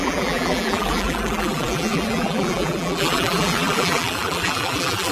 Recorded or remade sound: remade